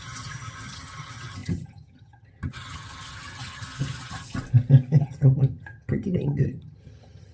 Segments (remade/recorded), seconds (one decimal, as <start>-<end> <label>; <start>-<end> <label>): 0.0-4.4 remade; 4.4-5.0 recorded; 5.0-7.3 remade